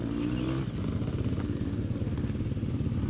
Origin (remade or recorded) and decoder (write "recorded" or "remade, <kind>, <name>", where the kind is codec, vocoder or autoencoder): recorded